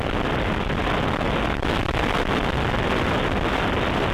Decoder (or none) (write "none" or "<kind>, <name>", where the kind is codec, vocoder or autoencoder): none